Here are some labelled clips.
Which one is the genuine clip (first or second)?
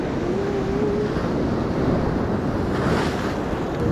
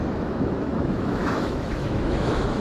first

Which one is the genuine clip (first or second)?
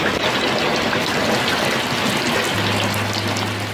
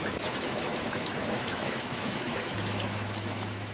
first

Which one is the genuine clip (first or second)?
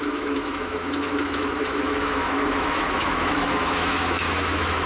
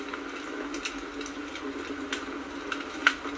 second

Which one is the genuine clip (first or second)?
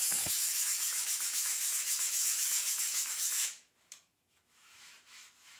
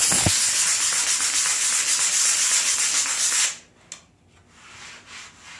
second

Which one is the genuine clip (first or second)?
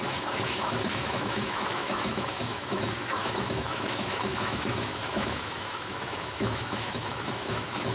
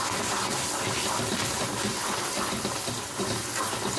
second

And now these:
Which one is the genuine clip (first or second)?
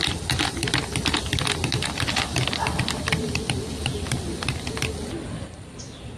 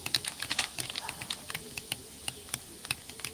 first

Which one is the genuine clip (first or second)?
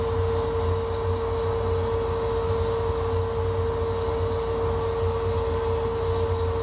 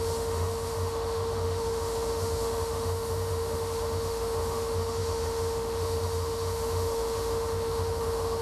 first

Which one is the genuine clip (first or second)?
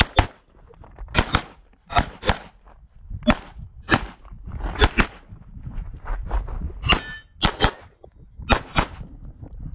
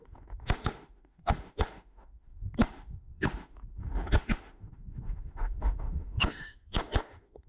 first